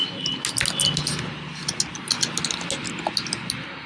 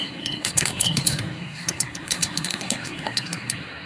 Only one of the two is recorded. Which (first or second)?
first